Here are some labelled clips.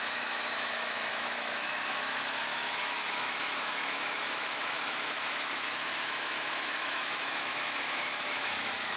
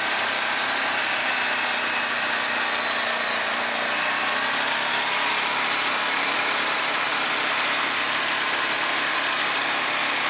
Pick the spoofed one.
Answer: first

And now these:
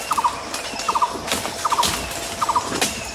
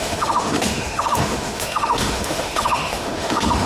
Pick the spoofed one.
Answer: second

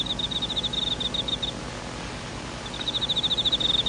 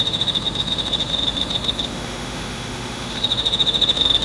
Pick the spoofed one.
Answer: second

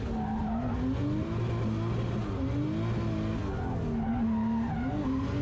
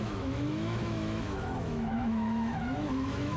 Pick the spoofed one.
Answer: second